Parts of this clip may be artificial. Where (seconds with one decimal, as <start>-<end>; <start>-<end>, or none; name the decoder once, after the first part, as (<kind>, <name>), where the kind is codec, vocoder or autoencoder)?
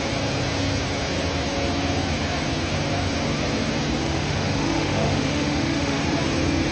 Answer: 4.0-6.0 (autoencoder, DAC-VAE)